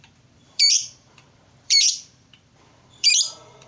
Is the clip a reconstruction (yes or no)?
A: yes